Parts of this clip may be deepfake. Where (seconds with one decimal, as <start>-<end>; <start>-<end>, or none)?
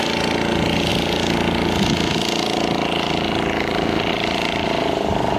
none